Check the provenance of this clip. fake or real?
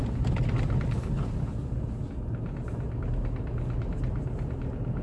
real